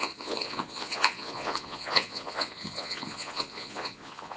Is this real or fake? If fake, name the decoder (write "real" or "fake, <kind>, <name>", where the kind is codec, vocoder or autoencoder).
fake, vocoder, Vocos